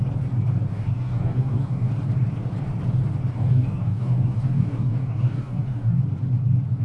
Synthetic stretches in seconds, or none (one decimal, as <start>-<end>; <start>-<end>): 0.7-1.9; 3.3-6.0